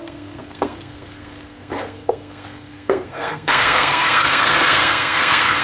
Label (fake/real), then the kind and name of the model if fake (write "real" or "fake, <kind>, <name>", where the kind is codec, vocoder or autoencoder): fake, codec, SNAC